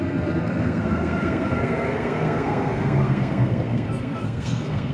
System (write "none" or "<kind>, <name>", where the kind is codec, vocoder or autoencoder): codec, SNAC